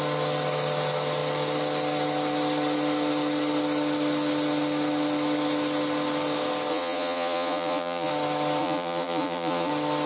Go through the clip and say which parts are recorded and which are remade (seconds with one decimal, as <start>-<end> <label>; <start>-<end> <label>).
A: 0.0-6.7 recorded; 6.7-8.1 remade; 8.1-8.6 recorded; 8.6-9.7 remade; 9.7-10.1 recorded